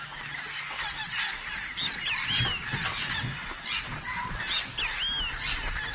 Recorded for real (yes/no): yes